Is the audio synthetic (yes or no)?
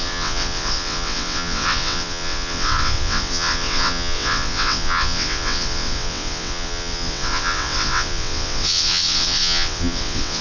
yes